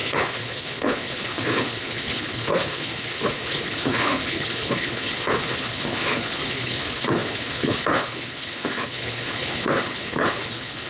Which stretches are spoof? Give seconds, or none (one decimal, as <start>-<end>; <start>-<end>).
0.0-10.9